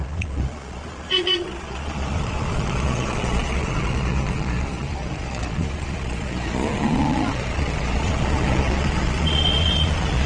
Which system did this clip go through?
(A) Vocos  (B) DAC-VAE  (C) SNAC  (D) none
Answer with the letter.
A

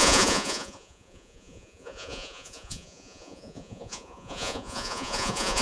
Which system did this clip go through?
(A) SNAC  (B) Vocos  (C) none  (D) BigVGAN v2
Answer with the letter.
B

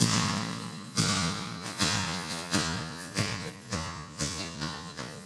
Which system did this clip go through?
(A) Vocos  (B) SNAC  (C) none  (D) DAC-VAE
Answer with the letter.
A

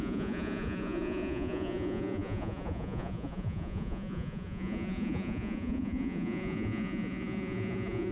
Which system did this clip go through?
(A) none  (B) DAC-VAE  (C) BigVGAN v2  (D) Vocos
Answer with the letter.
D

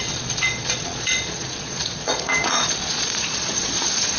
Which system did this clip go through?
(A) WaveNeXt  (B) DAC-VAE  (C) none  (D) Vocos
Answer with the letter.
D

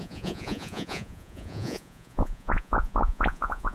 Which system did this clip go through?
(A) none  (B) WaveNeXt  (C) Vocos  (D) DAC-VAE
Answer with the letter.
C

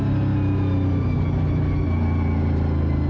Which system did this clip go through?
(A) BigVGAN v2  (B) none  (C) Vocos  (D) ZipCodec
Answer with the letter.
B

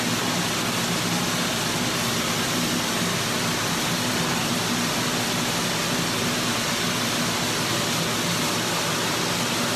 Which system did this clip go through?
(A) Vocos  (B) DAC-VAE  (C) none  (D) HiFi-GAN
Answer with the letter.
C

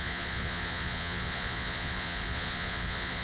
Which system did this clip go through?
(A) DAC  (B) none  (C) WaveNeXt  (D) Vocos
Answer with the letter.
D